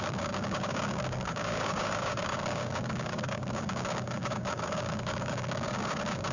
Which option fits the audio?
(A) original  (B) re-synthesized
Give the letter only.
B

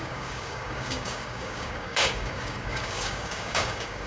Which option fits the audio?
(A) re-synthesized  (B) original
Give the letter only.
A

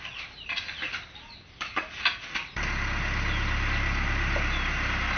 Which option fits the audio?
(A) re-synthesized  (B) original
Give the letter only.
B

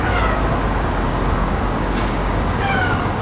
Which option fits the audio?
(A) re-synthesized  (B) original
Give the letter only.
A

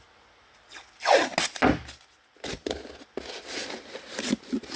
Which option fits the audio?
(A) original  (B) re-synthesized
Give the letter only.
A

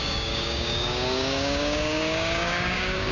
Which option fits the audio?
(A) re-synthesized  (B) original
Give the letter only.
A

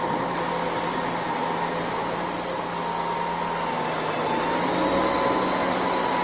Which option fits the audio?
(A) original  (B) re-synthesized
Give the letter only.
A